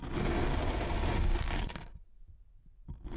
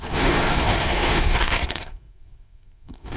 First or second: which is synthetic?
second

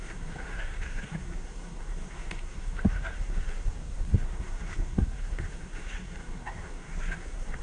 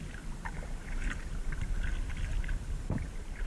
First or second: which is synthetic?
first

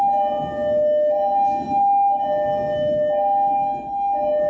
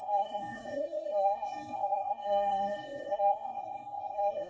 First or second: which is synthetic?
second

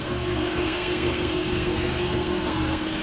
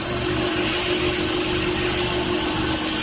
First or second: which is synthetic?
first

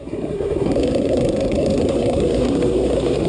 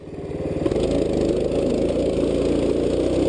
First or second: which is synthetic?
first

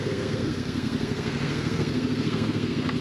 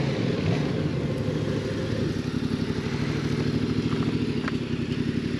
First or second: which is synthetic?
first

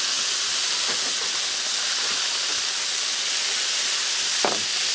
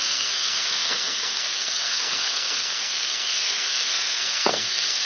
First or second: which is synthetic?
second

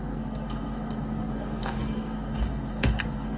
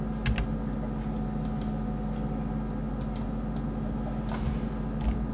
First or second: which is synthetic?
first